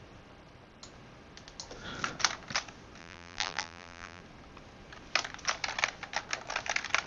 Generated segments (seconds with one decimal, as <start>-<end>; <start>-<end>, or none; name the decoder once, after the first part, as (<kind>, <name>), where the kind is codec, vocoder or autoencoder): 3.0-4.2 (vocoder, BigVGAN v2)